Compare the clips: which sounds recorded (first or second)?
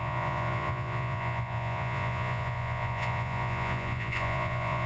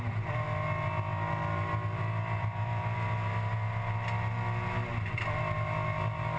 second